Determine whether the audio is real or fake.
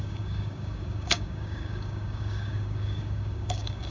fake